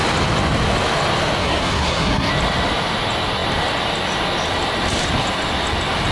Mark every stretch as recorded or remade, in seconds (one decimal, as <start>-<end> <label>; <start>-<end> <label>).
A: 0.0-1.4 recorded; 1.4-2.3 remade; 2.3-6.1 recorded